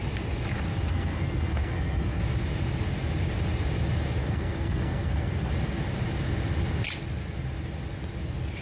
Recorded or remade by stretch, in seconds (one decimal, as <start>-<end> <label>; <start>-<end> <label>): 0.0-0.9 recorded; 0.9-2.2 remade; 2.2-4.2 recorded; 4.2-5.5 remade; 5.5-8.6 recorded